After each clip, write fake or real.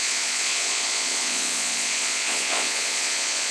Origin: fake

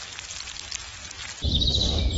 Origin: real